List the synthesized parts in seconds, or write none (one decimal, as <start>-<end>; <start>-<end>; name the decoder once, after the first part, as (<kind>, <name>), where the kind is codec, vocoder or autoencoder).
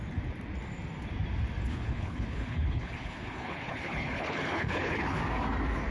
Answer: 1.7-5.2 (codec, HILCodec)